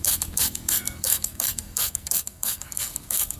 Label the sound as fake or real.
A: fake